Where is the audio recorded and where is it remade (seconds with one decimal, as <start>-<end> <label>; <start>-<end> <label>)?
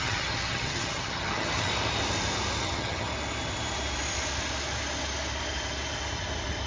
0.0-1.7 remade; 1.7-2.6 recorded; 2.6-3.1 remade; 3.1-6.7 recorded